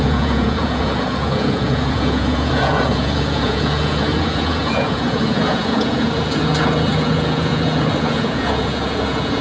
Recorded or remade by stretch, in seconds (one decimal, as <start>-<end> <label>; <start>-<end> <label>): 0.0-9.4 remade